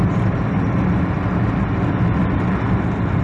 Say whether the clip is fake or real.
real